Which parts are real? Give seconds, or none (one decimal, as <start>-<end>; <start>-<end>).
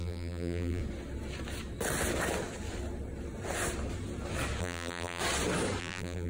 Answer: 0.8-4.6; 5.2-5.8